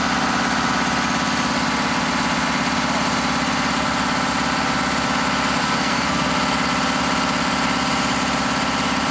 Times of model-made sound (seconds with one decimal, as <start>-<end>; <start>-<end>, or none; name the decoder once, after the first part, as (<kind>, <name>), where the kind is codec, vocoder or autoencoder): 5.6-6.3 (codec, SNAC)